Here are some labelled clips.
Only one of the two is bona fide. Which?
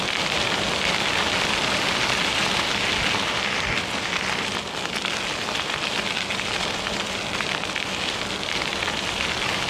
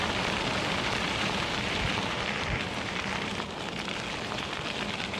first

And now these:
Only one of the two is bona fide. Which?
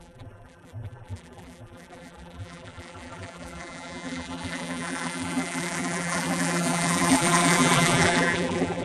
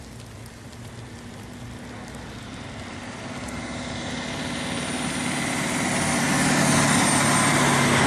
second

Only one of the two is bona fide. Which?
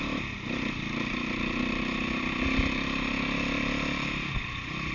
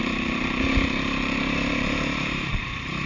first